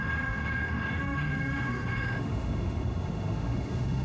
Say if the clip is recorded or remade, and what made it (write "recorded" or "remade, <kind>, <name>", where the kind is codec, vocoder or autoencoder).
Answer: remade, autoencoder, DAC-VAE